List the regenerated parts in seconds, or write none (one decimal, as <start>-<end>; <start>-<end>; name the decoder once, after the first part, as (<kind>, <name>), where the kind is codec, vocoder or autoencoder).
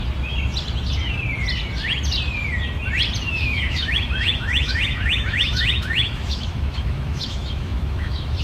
3.3-8.4 (autoencoder, DAC-VAE)